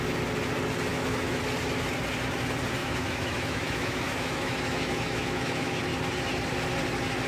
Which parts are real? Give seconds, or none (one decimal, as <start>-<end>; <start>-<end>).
0.0-0.9; 1.4-2.8; 5.8-7.3